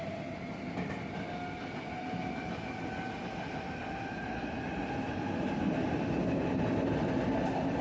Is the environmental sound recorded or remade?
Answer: recorded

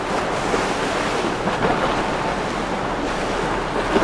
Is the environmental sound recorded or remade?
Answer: recorded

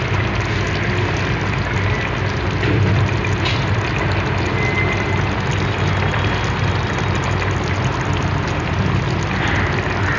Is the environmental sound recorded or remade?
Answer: recorded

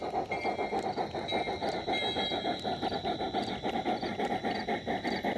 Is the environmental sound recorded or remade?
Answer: recorded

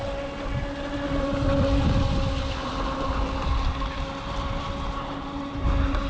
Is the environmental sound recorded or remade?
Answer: recorded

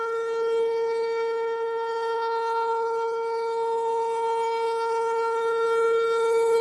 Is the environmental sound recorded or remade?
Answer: remade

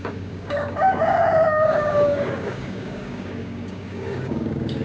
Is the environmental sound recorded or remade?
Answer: remade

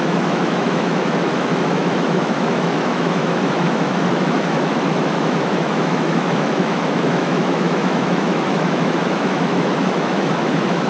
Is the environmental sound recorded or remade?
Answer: remade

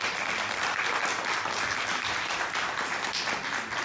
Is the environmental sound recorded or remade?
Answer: recorded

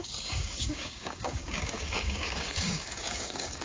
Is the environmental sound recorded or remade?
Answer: remade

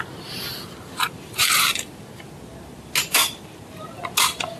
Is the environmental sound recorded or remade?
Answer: recorded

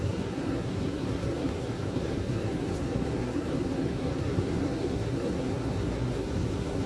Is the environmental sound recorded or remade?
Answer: remade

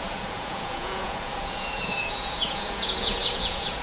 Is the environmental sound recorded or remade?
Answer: remade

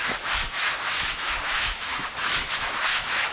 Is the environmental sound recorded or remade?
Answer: remade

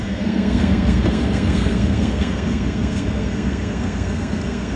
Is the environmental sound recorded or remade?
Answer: remade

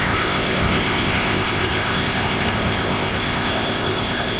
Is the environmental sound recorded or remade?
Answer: remade